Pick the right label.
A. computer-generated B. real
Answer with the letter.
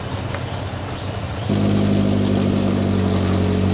B